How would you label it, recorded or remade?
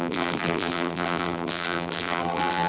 remade